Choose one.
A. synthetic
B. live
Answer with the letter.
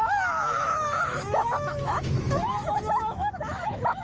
A